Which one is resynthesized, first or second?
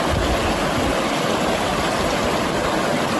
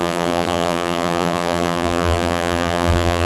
second